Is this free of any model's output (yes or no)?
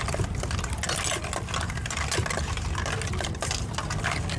yes